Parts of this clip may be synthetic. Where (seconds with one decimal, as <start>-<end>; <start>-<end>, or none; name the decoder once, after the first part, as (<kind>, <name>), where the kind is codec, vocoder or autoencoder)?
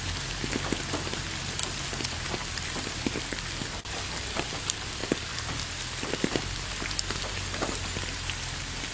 none